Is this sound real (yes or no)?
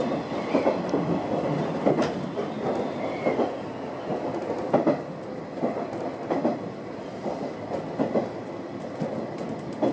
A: yes